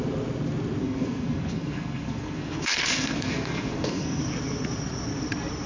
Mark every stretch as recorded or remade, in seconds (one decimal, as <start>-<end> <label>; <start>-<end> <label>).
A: 0.0-0.8 recorded; 0.8-4.2 remade; 4.2-5.7 recorded